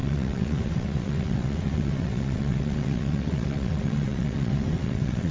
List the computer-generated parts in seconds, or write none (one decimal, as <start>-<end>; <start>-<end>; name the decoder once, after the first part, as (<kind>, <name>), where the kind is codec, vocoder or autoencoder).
0.0-5.3 (vocoder, WaveNeXt)